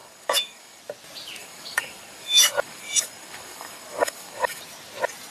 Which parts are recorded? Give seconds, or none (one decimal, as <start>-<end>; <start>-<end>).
0.8-1.4; 4.6-5.3